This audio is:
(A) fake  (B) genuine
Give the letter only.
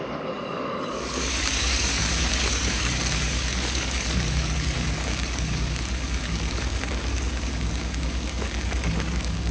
A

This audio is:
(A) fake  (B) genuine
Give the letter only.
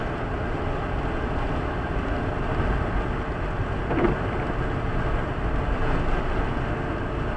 B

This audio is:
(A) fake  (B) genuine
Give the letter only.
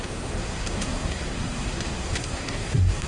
A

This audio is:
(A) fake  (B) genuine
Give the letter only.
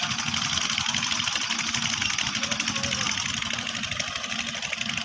B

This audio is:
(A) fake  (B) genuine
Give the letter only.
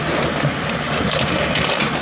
A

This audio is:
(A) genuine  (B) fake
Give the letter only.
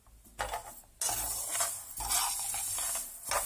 A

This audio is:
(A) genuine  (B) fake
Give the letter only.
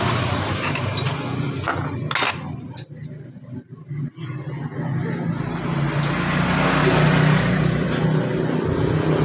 A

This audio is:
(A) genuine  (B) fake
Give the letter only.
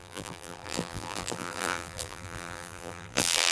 B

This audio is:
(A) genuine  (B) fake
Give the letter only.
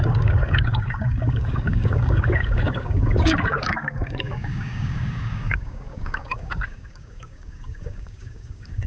B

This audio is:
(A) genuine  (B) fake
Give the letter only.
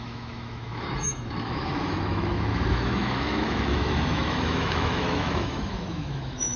B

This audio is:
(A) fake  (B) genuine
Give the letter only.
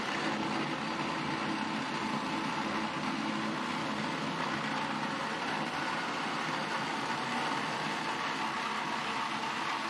B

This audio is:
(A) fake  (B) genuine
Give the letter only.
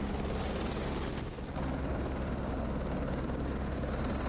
B